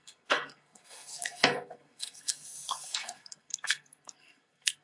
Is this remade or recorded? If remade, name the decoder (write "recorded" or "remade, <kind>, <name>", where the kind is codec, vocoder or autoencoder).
remade, codec, SNAC